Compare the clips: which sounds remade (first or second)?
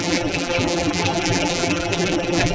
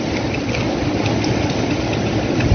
first